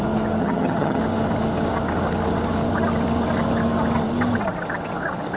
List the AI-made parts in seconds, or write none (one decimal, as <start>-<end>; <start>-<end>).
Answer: 0.4-1.0